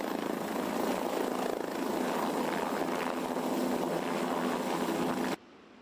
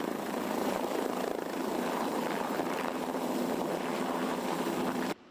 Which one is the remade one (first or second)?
second